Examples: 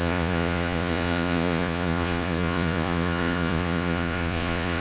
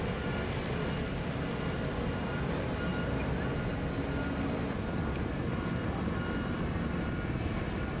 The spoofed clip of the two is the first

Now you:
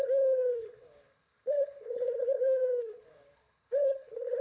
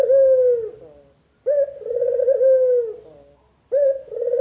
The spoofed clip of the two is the first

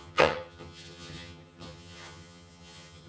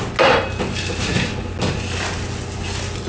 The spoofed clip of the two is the first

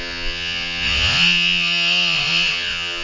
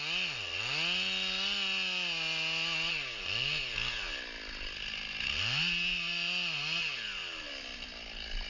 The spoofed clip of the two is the first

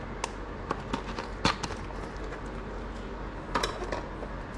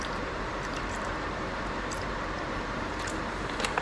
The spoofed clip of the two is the second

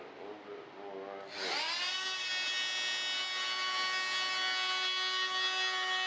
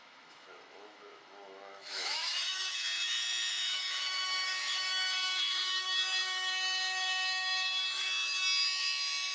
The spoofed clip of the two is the second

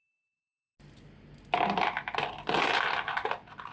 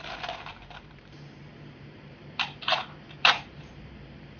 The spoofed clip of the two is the second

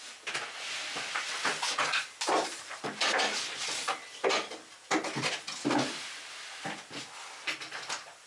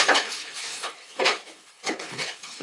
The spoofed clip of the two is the second